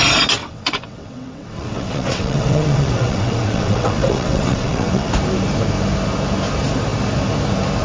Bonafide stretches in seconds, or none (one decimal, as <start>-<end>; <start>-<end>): 0.0-0.4; 5.1-7.8